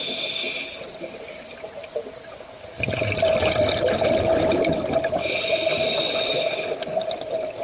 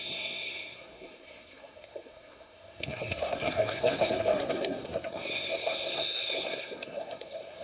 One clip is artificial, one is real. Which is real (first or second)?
first